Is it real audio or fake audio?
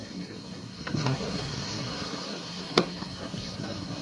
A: fake